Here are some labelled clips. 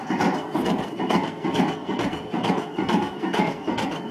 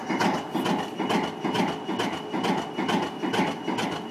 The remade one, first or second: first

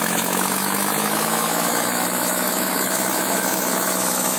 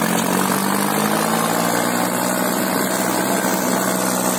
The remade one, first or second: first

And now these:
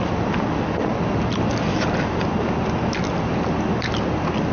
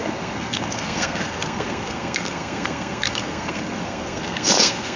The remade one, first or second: second